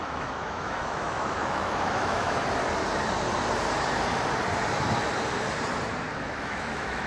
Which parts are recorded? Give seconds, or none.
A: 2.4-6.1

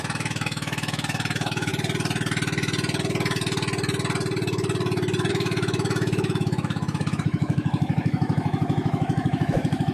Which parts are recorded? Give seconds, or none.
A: 1.7-5.3

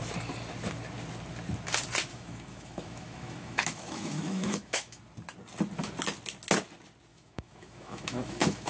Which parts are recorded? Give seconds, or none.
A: 0.0-2.1; 5.0-7.1